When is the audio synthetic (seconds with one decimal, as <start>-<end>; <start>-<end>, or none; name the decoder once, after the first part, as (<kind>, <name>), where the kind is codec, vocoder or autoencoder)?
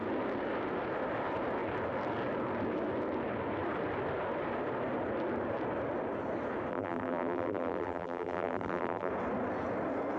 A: 6.7-9.1 (vocoder, BigVGAN v2)